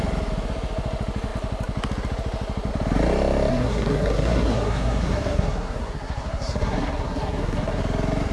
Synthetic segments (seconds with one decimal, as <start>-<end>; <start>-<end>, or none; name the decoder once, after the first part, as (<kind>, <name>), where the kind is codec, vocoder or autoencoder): 3.5-7.8 (codec, SNAC)